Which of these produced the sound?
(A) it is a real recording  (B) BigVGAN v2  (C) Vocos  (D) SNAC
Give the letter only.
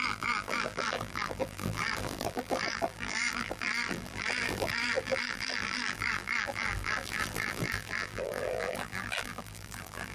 B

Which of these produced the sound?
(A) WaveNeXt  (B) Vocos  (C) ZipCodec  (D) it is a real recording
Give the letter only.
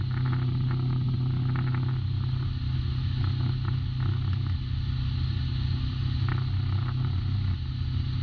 D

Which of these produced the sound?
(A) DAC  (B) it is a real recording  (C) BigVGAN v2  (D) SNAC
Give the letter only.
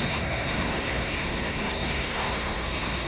D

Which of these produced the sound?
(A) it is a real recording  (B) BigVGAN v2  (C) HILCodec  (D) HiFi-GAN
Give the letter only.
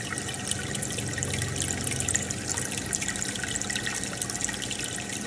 A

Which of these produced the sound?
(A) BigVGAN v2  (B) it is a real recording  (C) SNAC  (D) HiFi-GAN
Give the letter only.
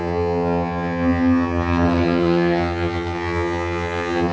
D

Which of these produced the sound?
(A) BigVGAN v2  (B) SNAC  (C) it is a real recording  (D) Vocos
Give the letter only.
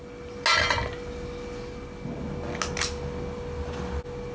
C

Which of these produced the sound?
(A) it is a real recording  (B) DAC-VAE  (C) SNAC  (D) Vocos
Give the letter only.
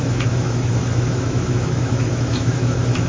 B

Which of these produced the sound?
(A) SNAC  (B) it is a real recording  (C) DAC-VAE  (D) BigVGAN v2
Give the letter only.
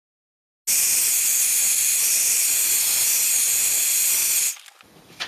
B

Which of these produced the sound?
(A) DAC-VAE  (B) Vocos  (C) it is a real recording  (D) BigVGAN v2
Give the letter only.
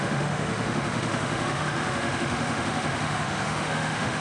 A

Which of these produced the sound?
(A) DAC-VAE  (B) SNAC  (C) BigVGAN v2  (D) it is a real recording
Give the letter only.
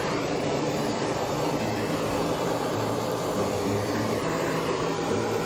C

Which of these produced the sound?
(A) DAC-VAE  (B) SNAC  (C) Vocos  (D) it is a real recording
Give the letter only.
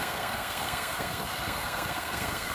B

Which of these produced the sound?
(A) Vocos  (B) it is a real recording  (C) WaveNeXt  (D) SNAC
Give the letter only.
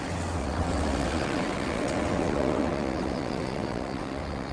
C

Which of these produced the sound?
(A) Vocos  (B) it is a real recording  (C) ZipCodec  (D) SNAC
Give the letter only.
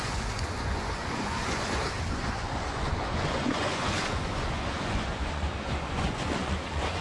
A